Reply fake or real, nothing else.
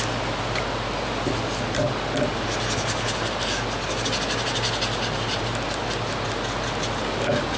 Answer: real